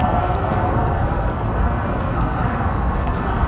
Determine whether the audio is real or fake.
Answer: fake